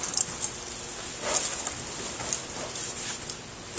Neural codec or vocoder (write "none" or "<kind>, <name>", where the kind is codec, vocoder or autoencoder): none